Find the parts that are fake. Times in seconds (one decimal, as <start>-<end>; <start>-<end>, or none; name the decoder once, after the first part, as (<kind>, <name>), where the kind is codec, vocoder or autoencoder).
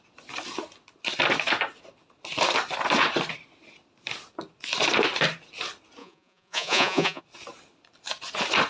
6.0-7.2 (vocoder, Vocos)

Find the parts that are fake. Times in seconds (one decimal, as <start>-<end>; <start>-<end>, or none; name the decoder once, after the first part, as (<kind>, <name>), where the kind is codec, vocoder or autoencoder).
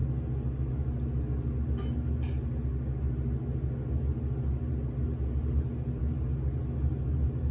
none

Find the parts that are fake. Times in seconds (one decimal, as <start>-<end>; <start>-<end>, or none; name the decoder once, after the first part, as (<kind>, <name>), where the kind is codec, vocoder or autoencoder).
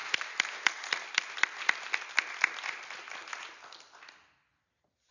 none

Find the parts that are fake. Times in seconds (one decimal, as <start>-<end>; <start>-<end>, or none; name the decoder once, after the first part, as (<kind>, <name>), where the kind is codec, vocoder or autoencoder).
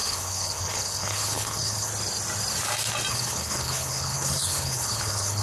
0.0-1.9 (codec, HILCodec); 3.1-5.4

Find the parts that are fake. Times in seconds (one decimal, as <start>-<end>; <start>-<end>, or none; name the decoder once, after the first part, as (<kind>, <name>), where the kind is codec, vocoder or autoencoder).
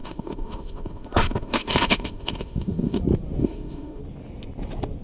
0.0-3.0 (autoencoder, DAC-VAE); 3.4-4.0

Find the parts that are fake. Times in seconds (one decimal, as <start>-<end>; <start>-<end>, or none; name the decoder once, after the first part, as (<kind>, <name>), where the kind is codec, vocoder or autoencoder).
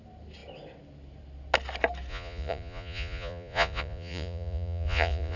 2.1-5.4 (vocoder, Vocos)